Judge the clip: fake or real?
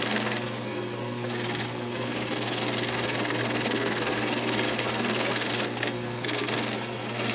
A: fake